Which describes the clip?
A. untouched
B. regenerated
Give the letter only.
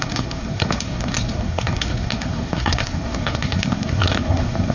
B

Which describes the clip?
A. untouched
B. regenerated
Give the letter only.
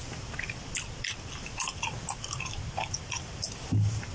A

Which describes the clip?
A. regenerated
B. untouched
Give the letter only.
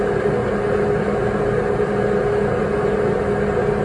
B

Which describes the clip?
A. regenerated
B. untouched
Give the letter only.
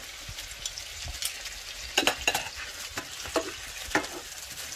B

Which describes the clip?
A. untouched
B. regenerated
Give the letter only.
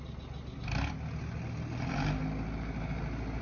A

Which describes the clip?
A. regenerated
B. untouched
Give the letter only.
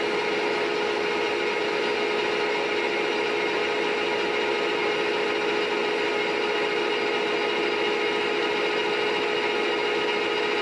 B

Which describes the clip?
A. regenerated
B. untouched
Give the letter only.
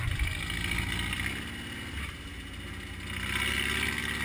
B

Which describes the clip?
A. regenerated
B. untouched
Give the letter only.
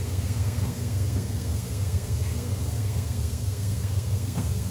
A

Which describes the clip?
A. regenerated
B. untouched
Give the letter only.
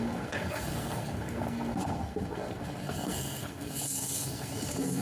A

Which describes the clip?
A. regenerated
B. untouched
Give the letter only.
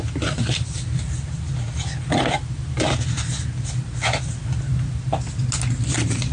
B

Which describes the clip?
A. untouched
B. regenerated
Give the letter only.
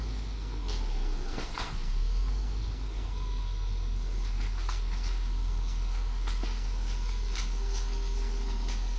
B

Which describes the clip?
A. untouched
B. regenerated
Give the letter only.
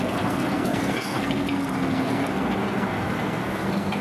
B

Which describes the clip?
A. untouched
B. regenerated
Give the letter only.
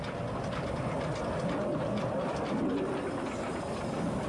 A